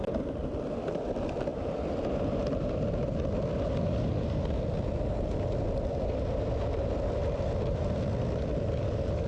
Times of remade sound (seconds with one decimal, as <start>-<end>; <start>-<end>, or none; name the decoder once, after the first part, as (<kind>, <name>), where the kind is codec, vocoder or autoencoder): none